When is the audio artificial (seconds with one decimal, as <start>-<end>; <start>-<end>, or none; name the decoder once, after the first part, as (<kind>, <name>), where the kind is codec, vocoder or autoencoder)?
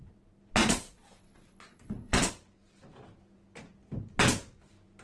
0.6-2.3 (vocoder, Vocos)